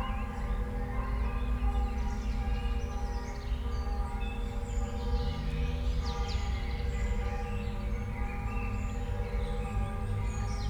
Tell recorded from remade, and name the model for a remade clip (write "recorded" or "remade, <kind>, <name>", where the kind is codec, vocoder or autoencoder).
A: recorded